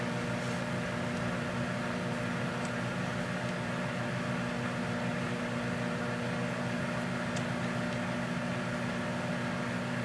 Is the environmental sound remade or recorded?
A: recorded